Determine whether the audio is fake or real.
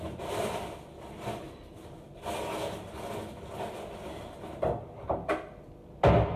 real